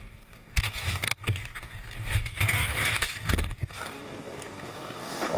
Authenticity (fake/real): fake